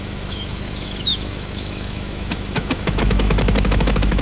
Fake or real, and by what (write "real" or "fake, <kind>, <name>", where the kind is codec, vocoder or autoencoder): fake, autoencoder, DAC-VAE